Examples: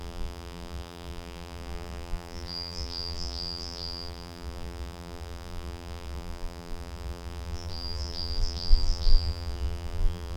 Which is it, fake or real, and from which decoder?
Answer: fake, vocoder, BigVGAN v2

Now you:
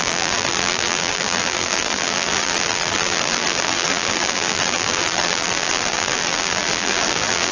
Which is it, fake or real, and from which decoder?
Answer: fake, vocoder, BigVGAN v2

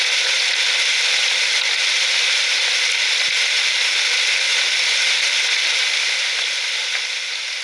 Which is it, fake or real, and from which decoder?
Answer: real